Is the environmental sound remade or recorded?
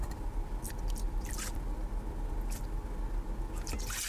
recorded